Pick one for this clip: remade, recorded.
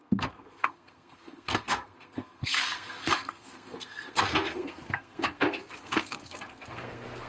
remade